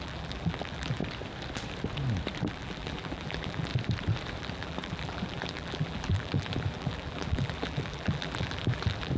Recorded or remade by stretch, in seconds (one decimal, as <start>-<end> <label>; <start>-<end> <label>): 0.0-1.0 remade; 1.0-2.5 recorded; 2.5-3.7 remade; 3.7-4.4 recorded; 4.4-9.2 remade